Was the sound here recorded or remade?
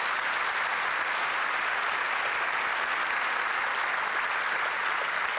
recorded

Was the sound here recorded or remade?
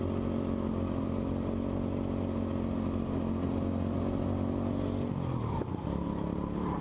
recorded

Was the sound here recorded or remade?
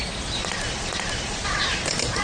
recorded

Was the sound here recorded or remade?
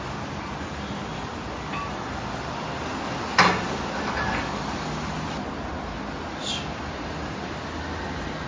recorded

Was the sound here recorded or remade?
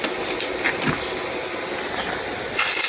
recorded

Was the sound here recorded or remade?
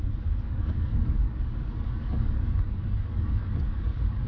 remade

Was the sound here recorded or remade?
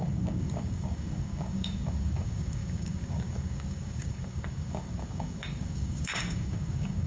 remade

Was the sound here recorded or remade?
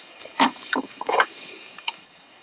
remade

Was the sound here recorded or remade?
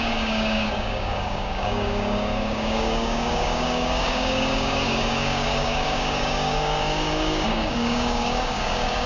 remade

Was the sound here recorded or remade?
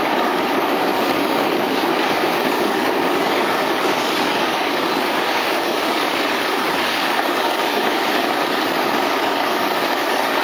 remade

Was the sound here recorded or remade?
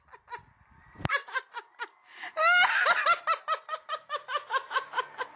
recorded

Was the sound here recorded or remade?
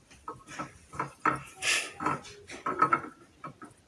recorded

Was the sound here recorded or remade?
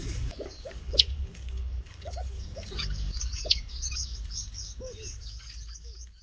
remade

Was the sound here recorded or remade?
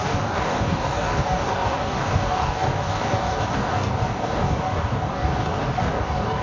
remade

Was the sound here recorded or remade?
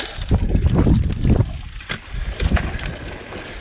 recorded